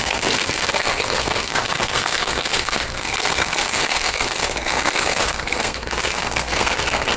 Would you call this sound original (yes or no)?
no